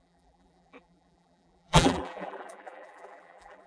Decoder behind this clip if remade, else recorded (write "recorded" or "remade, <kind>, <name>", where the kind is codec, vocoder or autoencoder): remade, vocoder, BigVGAN v2